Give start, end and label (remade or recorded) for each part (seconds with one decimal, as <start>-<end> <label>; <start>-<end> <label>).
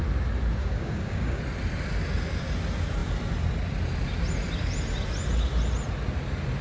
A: 0.0-0.6 recorded; 0.6-1.4 remade; 1.4-6.6 recorded